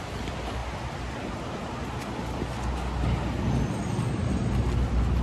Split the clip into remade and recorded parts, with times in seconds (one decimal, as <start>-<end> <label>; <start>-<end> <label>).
0.0-5.2 recorded